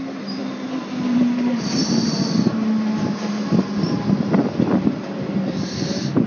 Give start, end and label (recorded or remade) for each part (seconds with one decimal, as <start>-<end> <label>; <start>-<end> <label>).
0.0-0.4 recorded; 0.4-2.2 remade; 2.2-6.3 recorded